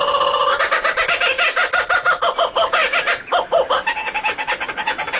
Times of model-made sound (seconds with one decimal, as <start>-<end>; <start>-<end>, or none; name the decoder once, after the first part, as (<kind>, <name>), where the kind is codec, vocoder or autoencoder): none